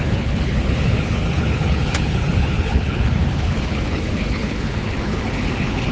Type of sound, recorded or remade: remade